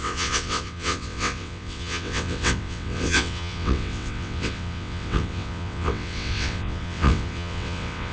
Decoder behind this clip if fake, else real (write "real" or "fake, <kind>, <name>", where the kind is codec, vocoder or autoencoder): fake, vocoder, WaveNeXt